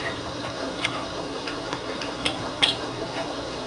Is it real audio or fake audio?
fake